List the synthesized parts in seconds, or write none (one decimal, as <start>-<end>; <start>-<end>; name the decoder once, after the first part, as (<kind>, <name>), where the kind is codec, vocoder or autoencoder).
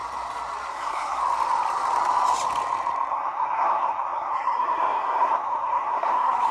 0.7-1.2 (codec, SNAC); 3.1-6.5